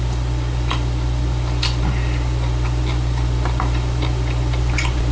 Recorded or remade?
recorded